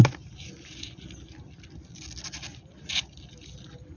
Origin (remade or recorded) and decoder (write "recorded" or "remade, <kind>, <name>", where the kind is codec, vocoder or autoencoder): recorded